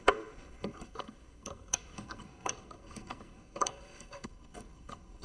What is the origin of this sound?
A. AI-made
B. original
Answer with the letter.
A